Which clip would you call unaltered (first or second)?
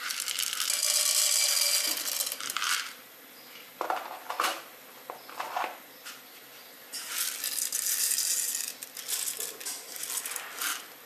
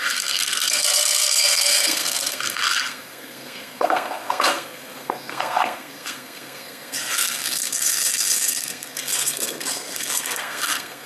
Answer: first